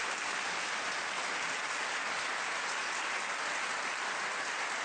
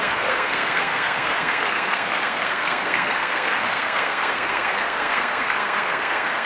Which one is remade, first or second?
second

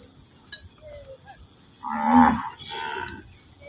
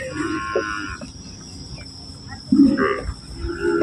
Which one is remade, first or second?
second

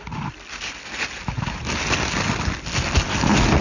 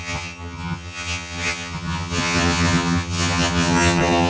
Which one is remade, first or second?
second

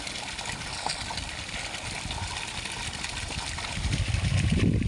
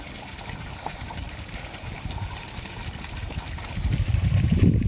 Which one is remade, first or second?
second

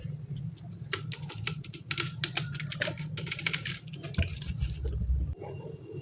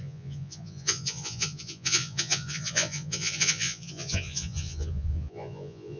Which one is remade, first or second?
second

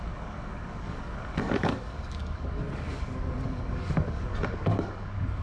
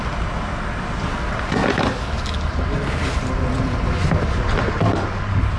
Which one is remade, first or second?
first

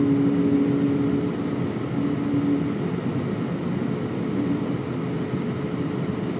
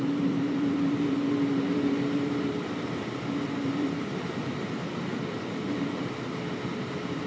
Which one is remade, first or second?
second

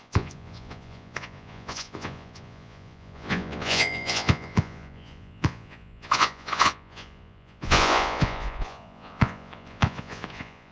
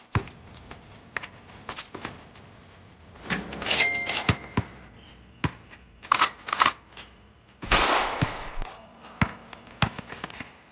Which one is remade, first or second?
first